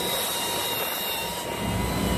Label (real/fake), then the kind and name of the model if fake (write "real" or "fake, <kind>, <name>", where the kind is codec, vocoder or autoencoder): real